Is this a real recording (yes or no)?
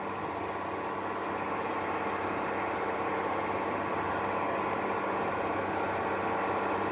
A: yes